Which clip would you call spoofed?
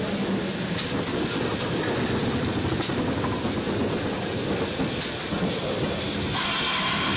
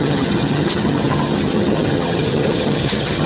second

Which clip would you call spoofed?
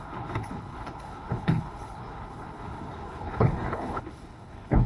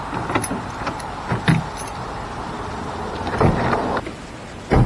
first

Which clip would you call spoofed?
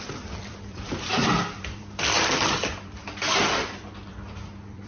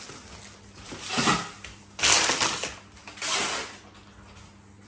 first